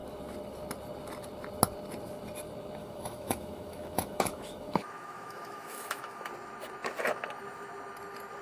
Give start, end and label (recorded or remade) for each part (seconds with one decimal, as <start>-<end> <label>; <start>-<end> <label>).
0.0-2.8 recorded; 2.8-6.3 remade; 6.3-8.4 recorded